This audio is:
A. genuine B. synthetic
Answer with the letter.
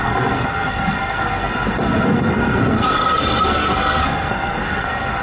B